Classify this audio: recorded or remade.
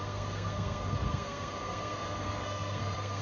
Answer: remade